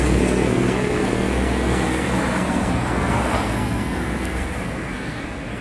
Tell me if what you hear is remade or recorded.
remade